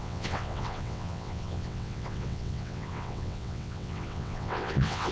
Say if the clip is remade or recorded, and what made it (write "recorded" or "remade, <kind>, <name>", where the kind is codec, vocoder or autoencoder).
remade, vocoder, WaveNeXt